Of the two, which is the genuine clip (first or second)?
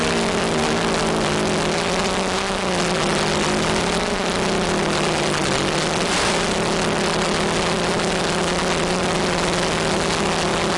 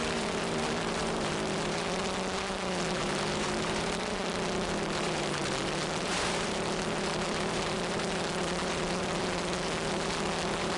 first